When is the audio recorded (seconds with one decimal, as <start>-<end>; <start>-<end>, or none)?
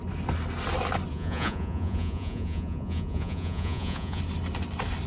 0.0-1.1; 4.2-5.1